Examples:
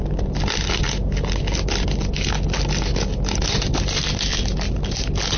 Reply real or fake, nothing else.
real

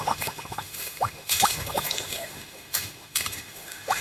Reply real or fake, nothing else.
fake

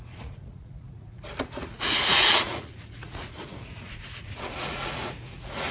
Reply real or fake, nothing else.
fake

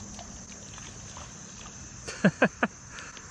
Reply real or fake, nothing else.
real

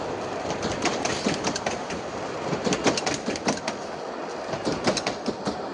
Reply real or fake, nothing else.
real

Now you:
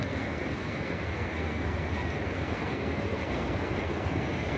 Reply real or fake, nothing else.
fake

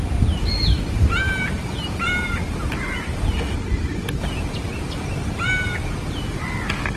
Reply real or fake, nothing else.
real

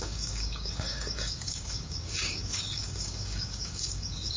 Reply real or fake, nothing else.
fake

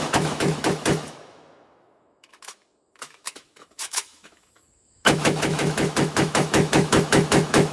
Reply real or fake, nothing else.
fake